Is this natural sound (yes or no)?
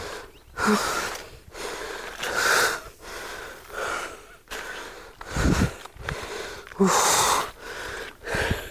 yes